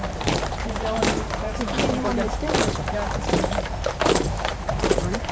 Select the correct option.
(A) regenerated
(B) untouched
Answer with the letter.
A